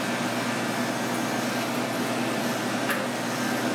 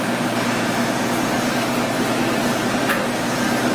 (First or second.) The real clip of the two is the first